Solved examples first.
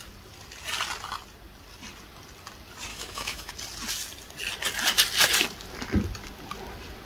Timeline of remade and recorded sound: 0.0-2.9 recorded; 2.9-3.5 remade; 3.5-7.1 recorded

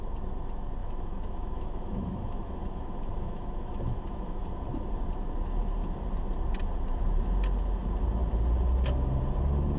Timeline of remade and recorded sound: 0.0-0.8 recorded; 0.8-4.5 remade; 4.5-9.8 recorded

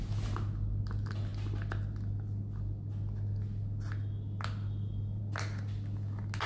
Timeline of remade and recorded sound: 0.0-6.5 recorded

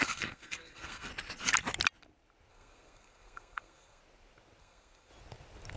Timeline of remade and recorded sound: 0.0-1.1 remade; 1.1-2.5 recorded; 2.5-4.0 remade; 4.0-4.6 recorded; 4.6-5.1 remade; 5.1-5.8 recorded

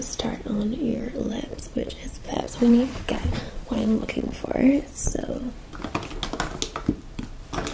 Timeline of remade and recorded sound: 0.0-0.9 recorded; 0.9-5.5 remade; 5.5-7.7 recorded

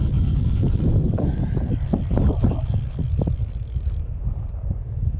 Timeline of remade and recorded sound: 0.0-1.4 remade; 1.4-4.5 recorded; 4.5-5.2 remade

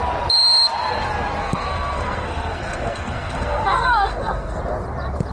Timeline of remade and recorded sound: 0.0-1.4 recorded; 1.4-4.6 remade; 4.6-5.3 recorded

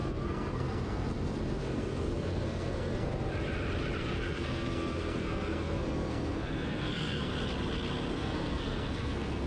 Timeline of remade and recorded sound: 0.0-3.1 remade; 3.1-4.0 recorded; 4.0-7.3 remade; 7.3-8.1 recorded; 8.1-9.5 remade